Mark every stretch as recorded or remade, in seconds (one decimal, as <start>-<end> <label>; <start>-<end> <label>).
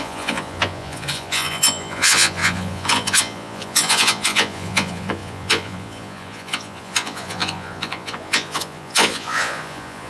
0.0-10.1 remade